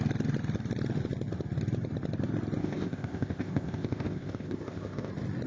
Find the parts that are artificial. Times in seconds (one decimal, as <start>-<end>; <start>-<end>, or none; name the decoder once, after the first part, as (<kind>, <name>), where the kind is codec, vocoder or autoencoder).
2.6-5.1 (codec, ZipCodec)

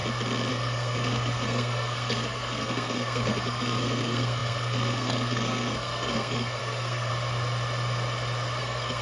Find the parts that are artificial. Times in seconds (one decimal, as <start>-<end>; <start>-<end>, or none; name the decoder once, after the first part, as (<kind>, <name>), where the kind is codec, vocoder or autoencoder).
0.5-7.1 (codec, SNAC); 8.6-9.0

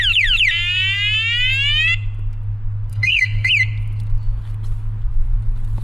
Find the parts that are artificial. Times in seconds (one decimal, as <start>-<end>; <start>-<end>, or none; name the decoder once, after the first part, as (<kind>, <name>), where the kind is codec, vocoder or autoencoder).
2.9-3.5 (codec, SNAC)

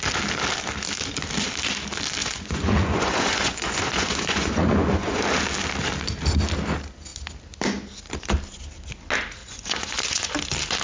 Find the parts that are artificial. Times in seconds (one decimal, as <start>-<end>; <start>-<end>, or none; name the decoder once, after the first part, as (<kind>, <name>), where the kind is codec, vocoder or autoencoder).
2.2-5.2 (vocoder, Vocos); 9.4-10.3

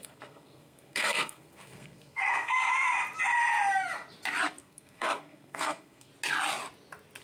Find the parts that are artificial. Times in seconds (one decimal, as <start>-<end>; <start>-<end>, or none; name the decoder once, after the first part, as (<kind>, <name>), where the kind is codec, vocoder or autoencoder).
0.0-2.7 (codec, SNAC); 4.6-6.1

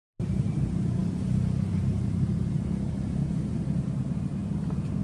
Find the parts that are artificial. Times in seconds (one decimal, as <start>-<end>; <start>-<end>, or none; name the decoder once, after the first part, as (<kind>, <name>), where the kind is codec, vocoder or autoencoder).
0.0-4.4 (vocoder, BigVGAN v2)

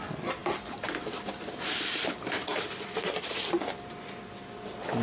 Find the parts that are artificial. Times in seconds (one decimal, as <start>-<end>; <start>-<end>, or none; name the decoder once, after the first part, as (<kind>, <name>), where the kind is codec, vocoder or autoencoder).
0.4-3.4 (vocoder, BigVGAN v2)